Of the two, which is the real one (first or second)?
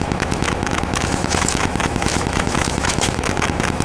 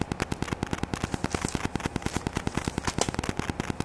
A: second